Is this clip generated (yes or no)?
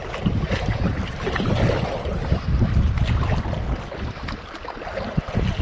no